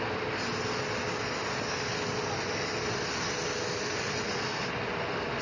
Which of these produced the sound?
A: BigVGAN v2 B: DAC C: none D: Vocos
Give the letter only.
C